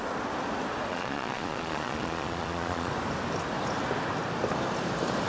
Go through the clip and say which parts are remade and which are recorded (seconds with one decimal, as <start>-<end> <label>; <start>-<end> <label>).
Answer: 0.0-0.9 recorded; 0.9-2.9 remade; 2.9-5.3 recorded